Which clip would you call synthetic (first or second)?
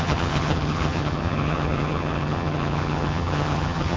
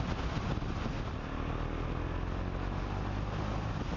first